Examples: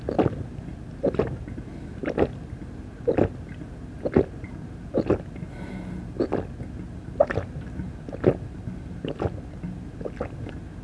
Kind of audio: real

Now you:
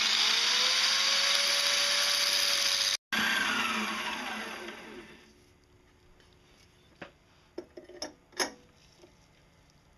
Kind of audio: real